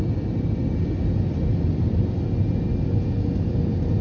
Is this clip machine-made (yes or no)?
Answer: no